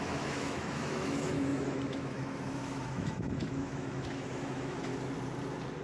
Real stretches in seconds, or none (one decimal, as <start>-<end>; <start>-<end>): 4.9-5.8